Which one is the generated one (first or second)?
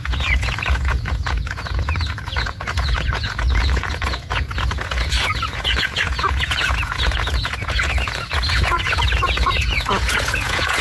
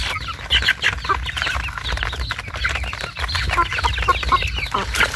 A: first